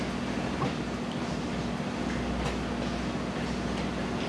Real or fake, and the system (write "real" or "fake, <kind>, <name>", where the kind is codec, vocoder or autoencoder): real